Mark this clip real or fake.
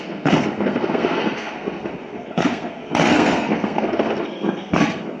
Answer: fake